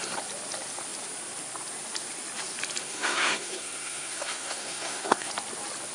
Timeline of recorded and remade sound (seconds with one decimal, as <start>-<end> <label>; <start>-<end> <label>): 0.0-2.8 recorded; 2.8-5.3 remade; 5.3-5.9 recorded